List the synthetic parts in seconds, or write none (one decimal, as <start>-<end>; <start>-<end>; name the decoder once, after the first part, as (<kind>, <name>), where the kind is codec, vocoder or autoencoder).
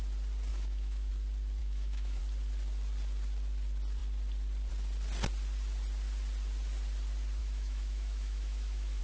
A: 0.5-1.1 (autoencoder, DAC-VAE); 1.6-2.2; 7.4-9.0